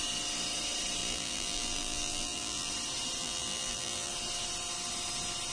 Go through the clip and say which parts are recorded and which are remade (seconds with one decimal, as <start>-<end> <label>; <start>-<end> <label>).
0.0-1.0 recorded; 1.0-2.7 remade; 2.7-3.2 recorded; 3.2-4.1 remade; 4.1-5.5 recorded